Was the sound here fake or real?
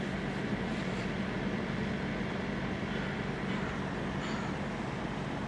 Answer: real